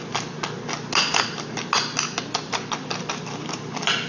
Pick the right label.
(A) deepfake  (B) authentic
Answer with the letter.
B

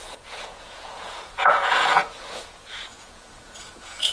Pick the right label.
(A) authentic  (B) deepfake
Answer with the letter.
B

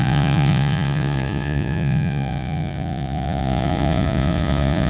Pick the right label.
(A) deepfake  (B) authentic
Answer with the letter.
A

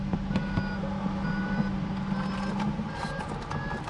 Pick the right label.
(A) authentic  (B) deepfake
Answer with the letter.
A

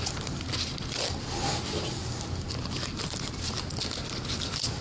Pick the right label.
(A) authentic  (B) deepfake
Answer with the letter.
A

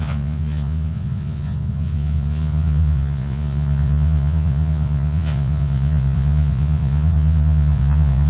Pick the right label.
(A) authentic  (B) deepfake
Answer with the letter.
B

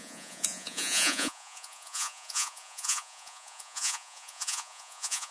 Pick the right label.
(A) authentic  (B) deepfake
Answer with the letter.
B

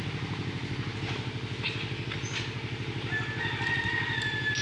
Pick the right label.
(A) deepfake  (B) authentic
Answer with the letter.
B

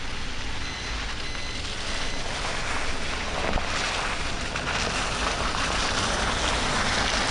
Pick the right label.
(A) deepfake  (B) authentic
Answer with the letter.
B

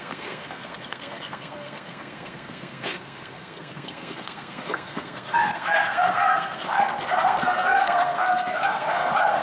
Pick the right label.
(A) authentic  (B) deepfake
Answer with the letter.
B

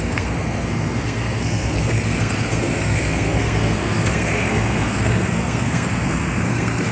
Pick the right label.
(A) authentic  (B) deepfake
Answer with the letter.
B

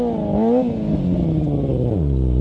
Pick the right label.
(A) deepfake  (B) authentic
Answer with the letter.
B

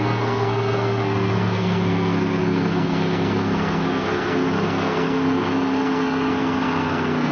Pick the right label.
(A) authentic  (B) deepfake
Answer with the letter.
B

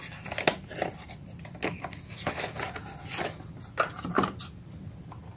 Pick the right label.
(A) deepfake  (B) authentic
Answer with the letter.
B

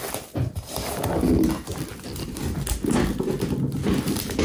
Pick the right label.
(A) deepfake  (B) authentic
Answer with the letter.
B